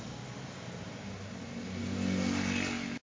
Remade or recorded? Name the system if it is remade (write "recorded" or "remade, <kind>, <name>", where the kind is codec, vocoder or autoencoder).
recorded